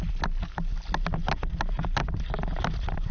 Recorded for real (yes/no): yes